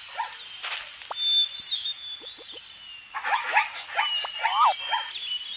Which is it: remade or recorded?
recorded